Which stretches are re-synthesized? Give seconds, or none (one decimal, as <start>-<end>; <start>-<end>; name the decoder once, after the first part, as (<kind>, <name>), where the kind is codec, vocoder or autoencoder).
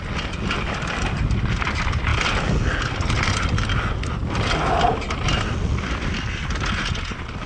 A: none